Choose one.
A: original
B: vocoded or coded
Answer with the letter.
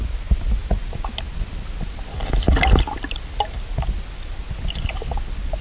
A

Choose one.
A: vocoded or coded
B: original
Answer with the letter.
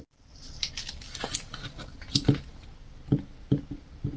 B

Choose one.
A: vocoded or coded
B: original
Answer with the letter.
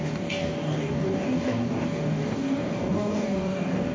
A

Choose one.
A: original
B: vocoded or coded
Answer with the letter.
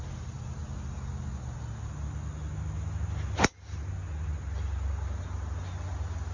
A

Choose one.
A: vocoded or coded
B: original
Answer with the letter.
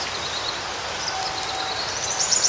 B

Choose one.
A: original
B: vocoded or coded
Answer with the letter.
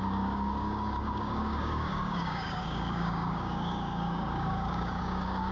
B